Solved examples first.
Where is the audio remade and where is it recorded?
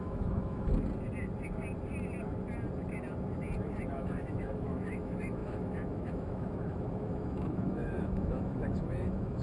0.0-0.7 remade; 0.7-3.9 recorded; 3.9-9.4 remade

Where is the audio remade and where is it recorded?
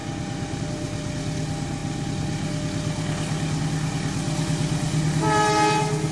0.0-6.1 recorded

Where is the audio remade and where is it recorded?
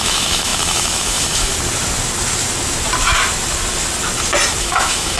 0.0-1.5 remade; 1.5-4.6 recorded; 4.6-5.2 remade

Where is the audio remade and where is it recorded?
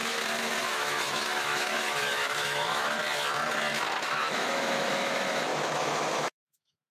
0.0-0.6 recorded; 0.6-3.0 remade; 3.0-4.0 recorded; 4.0-6.9 remade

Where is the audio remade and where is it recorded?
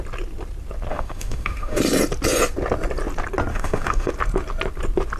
0.0-0.9 recorded; 0.9-1.8 remade; 1.8-3.5 recorded; 3.5-4.1 remade; 4.1-5.2 recorded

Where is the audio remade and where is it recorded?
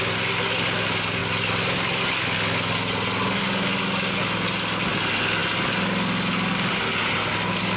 0.0-7.8 recorded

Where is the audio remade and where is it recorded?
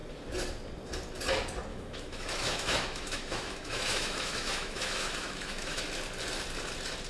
0.0-1.7 recorded; 1.7-5.8 remade; 5.8-7.1 recorded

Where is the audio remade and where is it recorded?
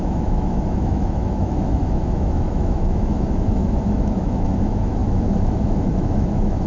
0.0-6.7 remade